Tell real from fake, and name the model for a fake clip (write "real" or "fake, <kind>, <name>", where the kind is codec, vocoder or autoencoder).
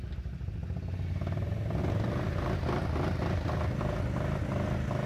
real